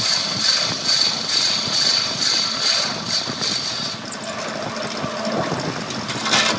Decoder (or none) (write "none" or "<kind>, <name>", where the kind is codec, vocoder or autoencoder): none